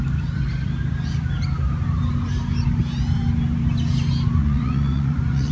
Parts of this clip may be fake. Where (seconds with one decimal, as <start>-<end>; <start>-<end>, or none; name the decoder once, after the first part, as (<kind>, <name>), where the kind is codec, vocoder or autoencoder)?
4.4-5.5 (vocoder, Vocos)

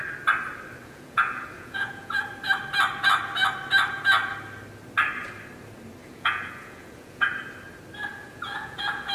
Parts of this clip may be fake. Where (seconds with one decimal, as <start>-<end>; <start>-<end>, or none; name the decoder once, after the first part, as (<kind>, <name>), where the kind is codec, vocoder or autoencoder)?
0.8-2.2 (vocoder, Vocos); 6.0-7.3; 8.1-9.1

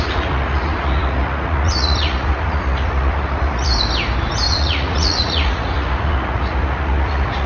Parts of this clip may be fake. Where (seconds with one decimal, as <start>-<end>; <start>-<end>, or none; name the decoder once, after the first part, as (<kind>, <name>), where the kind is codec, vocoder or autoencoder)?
0.0-3.7 (vocoder, Vocos); 4.5-7.5

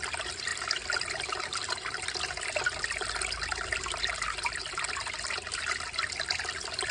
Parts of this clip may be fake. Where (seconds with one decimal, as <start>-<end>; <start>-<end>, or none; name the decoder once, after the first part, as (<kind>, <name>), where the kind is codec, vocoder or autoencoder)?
none

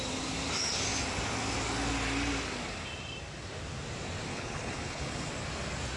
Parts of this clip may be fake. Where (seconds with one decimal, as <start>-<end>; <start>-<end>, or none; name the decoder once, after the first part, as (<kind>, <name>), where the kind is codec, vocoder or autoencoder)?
4.3-5.3 (codec, HILCodec)

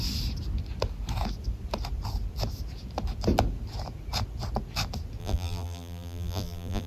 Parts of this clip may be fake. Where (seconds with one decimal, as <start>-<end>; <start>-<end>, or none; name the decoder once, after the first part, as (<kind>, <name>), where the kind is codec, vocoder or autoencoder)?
5.2-6.9 (vocoder, BigVGAN v2)

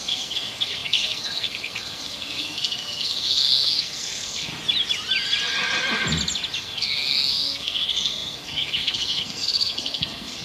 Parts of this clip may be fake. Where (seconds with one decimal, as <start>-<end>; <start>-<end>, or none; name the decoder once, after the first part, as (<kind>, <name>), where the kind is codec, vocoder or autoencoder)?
0.0-4.5 (codec, SNAC); 6.6-10.4

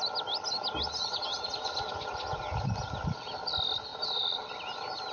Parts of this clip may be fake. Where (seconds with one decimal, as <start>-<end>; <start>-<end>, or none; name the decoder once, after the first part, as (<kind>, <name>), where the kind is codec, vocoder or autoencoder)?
1.3-1.9 (vocoder, BigVGAN v2); 3.9-4.4